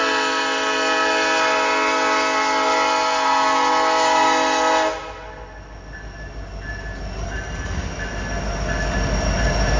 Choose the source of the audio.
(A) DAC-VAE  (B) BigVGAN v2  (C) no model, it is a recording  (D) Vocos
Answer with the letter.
C